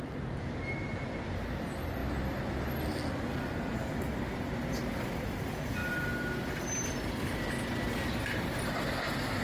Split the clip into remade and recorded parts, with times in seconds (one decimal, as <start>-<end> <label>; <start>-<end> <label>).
0.0-9.4 recorded